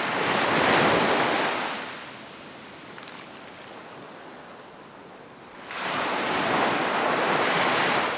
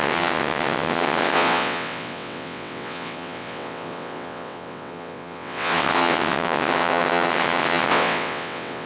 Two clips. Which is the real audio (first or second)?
first